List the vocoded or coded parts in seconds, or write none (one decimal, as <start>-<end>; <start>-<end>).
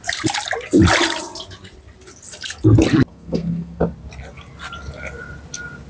3.1-3.8